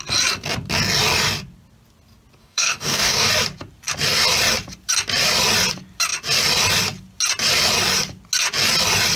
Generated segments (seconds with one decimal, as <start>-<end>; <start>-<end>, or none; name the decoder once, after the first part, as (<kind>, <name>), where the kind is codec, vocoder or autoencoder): 2.4-3.3 (codec, DAC)